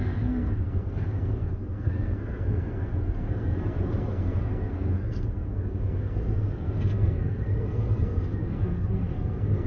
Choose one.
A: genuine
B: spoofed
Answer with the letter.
B